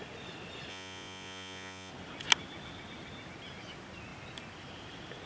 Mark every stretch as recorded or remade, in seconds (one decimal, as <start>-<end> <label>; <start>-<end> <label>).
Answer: 0.0-0.7 recorded; 0.7-1.9 remade; 1.9-5.3 recorded

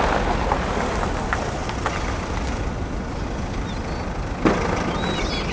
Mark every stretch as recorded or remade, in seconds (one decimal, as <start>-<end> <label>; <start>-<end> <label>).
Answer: 0.0-5.5 recorded